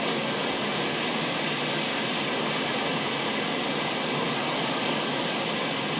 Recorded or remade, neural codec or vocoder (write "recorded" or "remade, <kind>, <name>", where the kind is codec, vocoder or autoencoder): recorded